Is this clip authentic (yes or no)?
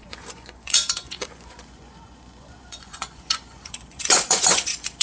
no